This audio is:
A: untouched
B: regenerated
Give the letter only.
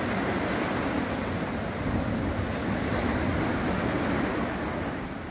A